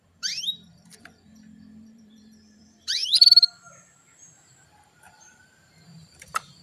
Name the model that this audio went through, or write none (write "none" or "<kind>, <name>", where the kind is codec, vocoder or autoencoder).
vocoder, BigVGAN v2